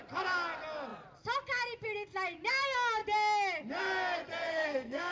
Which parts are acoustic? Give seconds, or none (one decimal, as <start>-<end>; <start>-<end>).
0.0-4.5